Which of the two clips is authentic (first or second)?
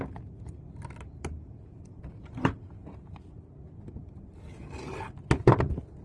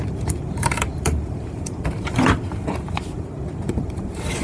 first